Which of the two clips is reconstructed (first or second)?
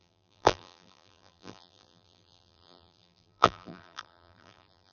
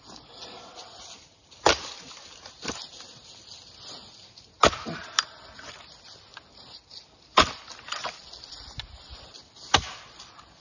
first